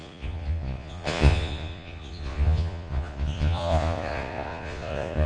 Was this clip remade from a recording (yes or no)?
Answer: yes